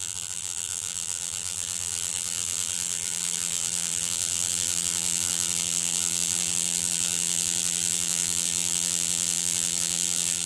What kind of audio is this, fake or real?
fake